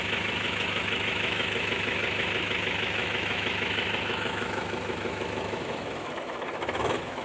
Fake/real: fake